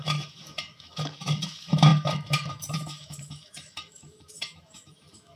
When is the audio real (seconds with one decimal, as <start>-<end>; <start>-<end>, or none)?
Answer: none